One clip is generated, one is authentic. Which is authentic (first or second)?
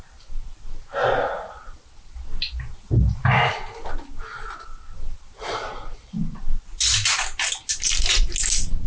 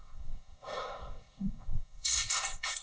first